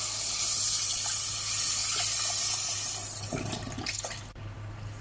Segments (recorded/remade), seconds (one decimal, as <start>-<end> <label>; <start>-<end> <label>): 0.0-5.0 recorded